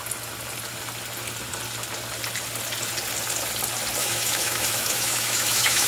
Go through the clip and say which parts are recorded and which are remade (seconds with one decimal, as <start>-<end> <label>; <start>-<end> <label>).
0.0-4.0 recorded; 4.0-5.9 remade